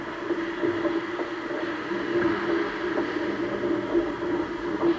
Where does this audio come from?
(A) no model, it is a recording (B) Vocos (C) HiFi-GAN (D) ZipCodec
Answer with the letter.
A